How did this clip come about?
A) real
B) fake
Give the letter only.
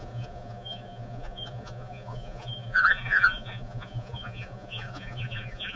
B